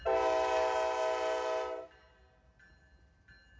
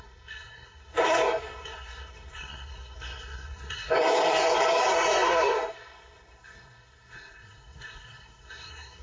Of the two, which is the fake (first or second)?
second